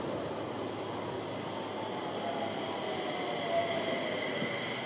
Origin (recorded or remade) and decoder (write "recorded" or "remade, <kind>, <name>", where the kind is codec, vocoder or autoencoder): recorded